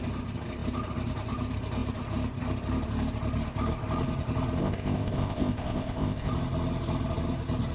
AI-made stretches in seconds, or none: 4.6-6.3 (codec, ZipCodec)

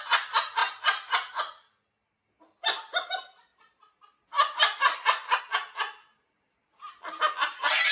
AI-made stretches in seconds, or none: none

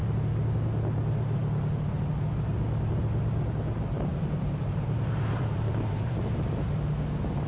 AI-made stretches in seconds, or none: 4.1-6.2 (vocoder, BigVGAN v2)

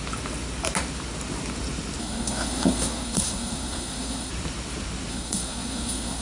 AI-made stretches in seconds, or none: 2.0-4.3 (codec, SNAC); 5.1-6.2